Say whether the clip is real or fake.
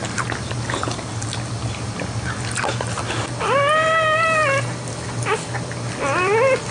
real